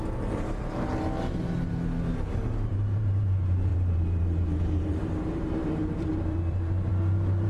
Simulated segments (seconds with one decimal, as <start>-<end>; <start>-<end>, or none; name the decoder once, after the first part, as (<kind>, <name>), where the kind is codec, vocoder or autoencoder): 0.0-0.9 (vocoder, BigVGAN v2); 2.7-7.5